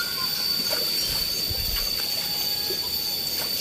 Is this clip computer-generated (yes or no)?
no